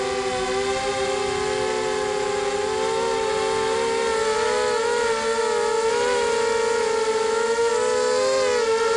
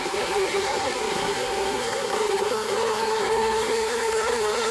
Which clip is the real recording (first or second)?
first